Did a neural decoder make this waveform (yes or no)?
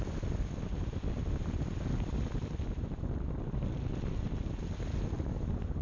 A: no